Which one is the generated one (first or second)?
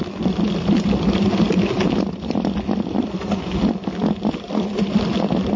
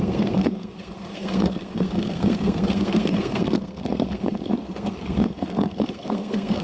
second